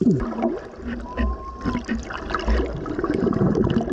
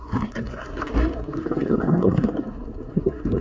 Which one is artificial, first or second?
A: second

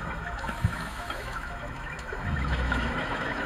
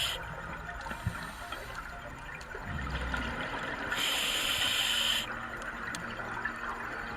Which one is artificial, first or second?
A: first